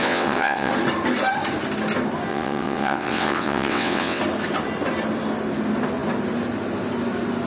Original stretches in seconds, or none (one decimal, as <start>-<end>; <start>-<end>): 0.7-2.3; 4.2-7.5